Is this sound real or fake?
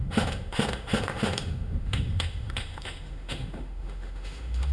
fake